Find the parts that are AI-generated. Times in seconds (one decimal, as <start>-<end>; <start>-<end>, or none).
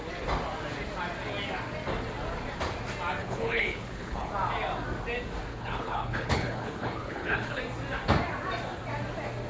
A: 3.2-4.3; 5.5-7.6